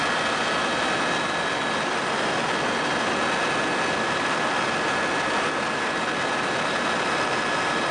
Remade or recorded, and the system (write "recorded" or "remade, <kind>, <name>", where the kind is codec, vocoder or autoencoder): recorded